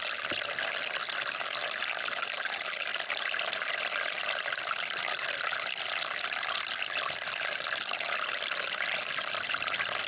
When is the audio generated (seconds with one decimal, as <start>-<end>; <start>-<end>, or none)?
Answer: none